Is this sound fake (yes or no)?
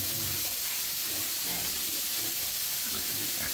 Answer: yes